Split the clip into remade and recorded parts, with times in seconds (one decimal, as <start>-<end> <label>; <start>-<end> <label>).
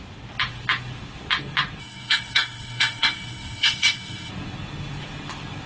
0.0-1.8 recorded; 1.8-4.3 remade; 4.3-5.7 recorded